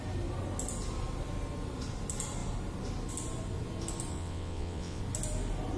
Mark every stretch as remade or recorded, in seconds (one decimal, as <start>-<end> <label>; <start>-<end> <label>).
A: 0.0-4.1 recorded; 4.1-5.0 remade; 5.0-5.8 recorded